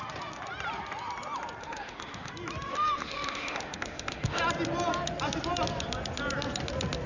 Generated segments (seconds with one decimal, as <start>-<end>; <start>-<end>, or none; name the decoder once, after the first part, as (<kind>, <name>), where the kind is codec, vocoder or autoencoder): 1.6-2.3 (autoencoder, DAC-VAE); 2.7-4.4